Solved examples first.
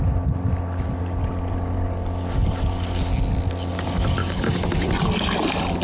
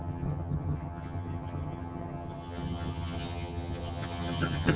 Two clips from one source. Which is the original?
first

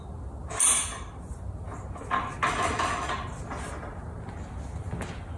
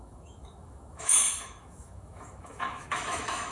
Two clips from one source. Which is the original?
first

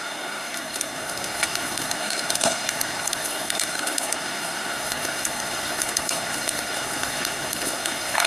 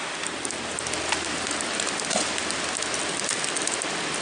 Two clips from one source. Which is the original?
second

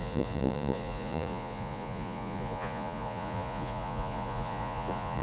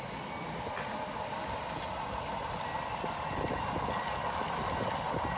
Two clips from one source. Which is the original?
second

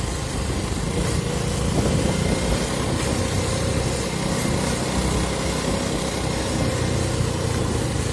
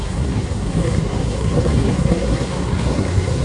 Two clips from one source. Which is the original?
first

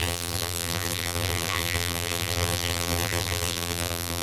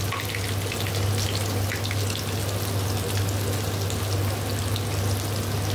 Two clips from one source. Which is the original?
second